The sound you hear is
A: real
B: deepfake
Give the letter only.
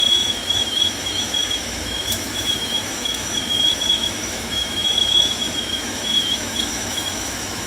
B